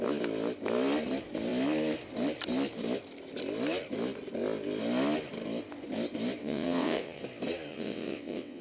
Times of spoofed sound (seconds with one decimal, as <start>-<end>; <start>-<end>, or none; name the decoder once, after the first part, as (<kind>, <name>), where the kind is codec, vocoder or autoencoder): 6.4-7.2 (vocoder, WaveNeXt); 7.7-8.6